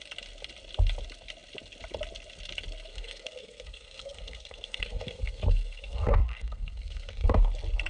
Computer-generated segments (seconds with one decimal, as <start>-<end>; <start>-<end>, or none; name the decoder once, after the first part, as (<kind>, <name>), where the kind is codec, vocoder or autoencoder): 2.9-7.5 (codec, SNAC)

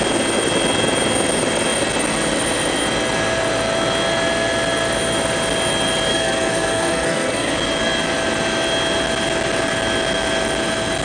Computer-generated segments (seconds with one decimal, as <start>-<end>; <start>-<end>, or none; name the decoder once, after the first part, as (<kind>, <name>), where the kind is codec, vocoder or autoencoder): 6.1-7.5 (codec, SNAC)

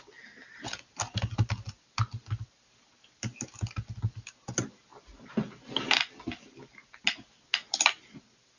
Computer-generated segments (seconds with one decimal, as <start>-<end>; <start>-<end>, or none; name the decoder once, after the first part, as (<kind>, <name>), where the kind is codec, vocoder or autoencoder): none

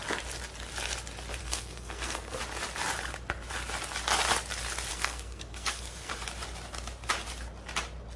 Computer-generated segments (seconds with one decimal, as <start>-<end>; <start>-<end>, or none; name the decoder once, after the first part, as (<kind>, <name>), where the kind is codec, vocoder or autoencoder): 1.4-2.4 (codec, SNAC); 4.9-6.1

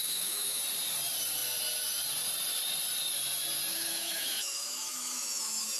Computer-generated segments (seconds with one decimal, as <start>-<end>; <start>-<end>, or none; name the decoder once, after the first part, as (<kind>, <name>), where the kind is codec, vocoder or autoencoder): 0.0-0.6 (autoencoder, DAC-VAE); 3.7-5.8

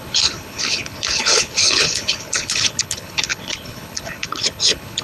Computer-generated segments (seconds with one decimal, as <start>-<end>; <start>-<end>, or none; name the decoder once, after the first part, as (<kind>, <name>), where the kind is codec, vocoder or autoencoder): 0.0-5.0 (codec, HILCodec)